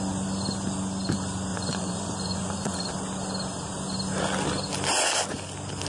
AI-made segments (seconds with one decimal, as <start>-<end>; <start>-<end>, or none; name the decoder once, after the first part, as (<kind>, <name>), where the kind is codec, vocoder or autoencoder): 1.5-2.9 (vocoder, Vocos)